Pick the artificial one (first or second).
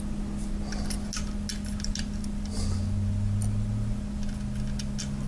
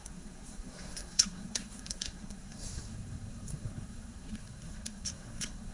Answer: second